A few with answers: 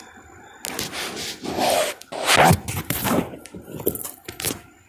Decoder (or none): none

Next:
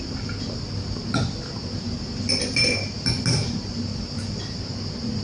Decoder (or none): none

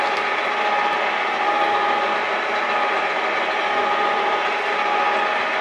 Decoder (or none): none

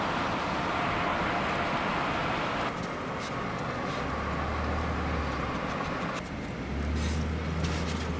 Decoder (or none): none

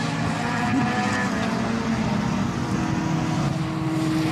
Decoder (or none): none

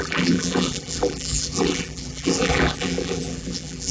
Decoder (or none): vocoder, BigVGAN v2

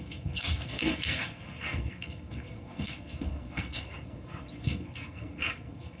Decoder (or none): codec, SNAC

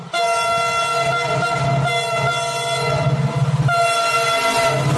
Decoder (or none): none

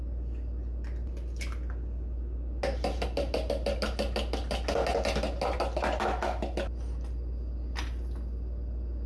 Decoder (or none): none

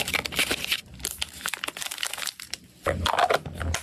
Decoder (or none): none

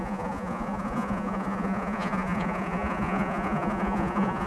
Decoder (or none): vocoder, Vocos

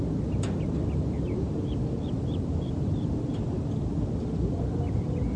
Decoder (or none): none